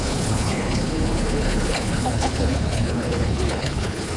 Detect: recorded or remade remade